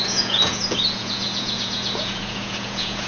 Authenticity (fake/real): fake